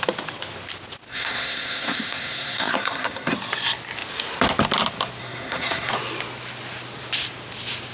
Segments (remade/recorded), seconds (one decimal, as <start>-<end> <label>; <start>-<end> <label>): 0.0-1.1 recorded; 1.1-3.3 remade; 3.3-5.2 recorded; 5.2-5.9 remade; 5.9-7.9 recorded